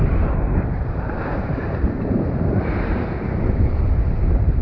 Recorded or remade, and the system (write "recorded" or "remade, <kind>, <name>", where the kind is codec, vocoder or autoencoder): remade, vocoder, BigVGAN v2